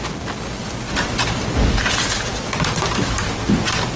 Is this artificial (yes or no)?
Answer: no